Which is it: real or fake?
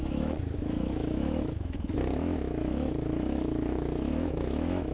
fake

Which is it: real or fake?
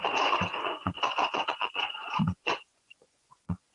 fake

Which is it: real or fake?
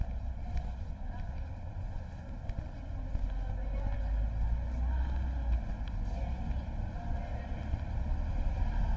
real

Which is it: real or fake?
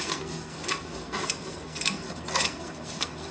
fake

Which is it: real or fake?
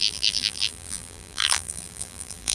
fake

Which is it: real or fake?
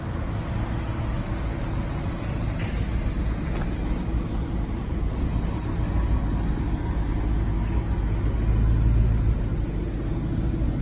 real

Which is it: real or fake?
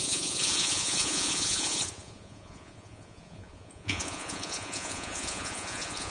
fake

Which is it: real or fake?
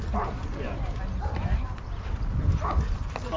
fake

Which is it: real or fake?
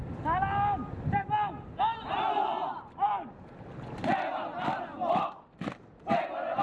real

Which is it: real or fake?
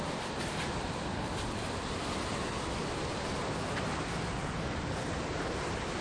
real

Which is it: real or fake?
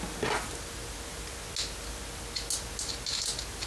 real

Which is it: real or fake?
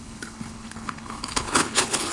fake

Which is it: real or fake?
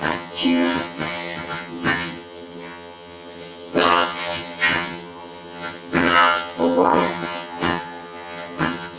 fake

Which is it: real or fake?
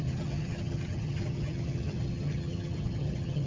fake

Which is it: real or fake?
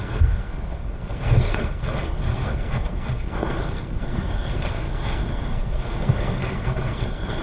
fake